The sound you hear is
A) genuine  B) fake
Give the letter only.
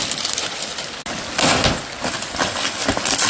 A